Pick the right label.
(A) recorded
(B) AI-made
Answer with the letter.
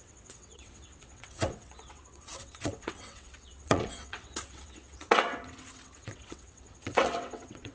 B